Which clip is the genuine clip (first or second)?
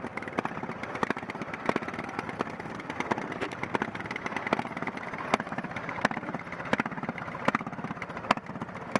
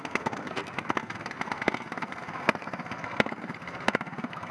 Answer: first